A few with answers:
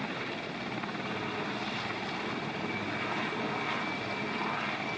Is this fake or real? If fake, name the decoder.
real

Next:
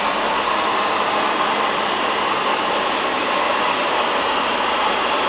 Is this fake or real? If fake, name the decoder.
real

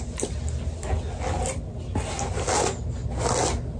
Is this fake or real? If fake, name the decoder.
real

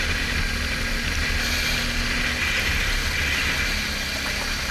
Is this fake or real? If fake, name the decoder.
real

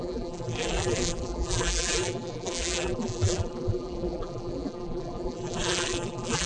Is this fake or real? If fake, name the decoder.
fake, vocoder, BigVGAN v2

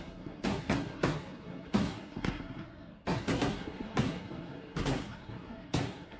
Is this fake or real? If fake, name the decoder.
fake, codec, SNAC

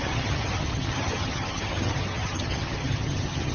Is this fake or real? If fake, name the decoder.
fake, vocoder, HiFi-GAN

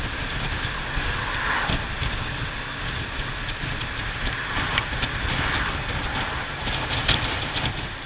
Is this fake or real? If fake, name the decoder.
real